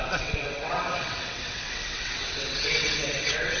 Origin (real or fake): fake